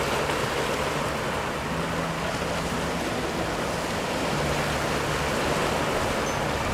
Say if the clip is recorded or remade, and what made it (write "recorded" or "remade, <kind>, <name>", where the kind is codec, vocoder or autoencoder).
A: recorded